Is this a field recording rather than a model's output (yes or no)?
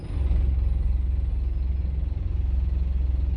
yes